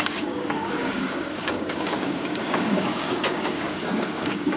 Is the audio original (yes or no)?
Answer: no